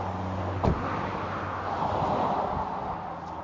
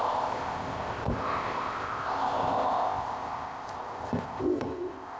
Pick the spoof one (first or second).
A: second